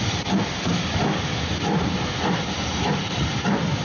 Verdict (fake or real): real